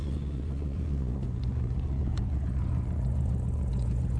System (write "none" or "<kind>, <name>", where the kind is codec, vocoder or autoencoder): vocoder, Vocos